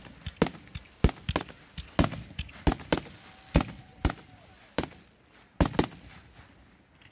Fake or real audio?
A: real